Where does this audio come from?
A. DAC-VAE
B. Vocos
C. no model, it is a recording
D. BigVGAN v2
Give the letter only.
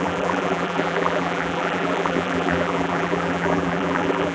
D